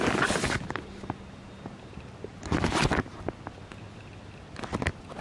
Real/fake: real